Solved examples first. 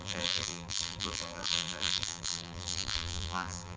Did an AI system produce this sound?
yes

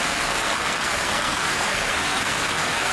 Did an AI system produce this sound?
yes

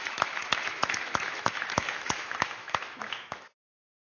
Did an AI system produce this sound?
yes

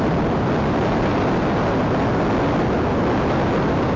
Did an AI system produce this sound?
no